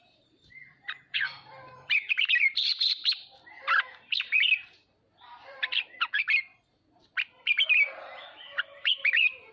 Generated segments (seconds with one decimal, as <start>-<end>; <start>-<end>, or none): 0.0-6.5; 7.4-9.5